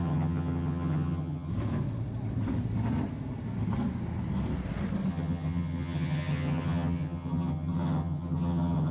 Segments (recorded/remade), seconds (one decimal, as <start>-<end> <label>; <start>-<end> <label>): 0.0-1.5 remade; 1.5-5.1 recorded; 5.1-8.9 remade